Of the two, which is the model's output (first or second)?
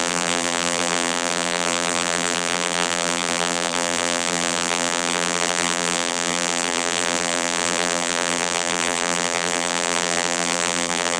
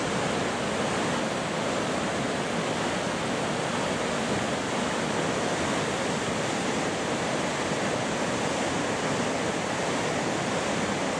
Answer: first